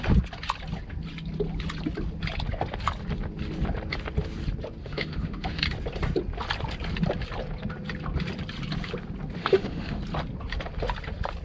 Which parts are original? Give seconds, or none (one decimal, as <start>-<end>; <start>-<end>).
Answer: 0.0-4.8; 5.6-9.4; 10.0-11.4